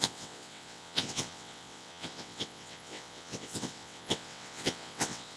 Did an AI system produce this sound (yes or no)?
yes